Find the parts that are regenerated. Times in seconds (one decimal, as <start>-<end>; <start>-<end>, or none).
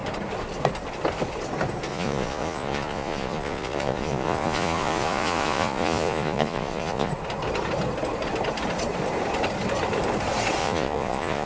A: 1.9-7.1; 10.6-11.5